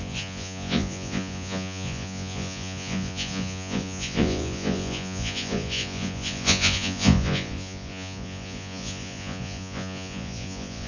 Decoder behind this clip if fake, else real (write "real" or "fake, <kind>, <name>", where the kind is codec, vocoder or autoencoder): fake, vocoder, Vocos